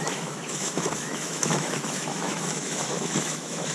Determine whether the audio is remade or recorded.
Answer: remade